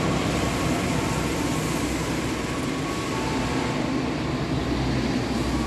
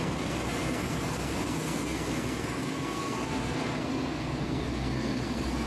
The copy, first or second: second